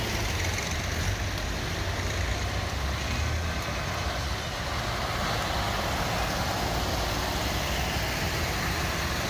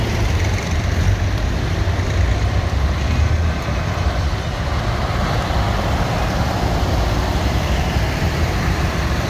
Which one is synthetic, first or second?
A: second